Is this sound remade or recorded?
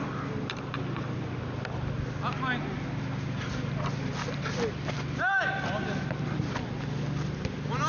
recorded